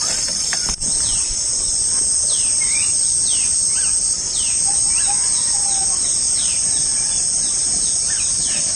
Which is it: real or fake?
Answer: fake